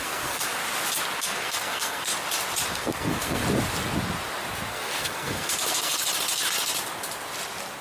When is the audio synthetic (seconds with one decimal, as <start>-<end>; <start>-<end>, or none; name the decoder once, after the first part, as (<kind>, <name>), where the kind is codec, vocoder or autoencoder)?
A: 0.0-0.6 (codec, SNAC); 1.2-2.1; 2.8-3.4; 4.7-5.9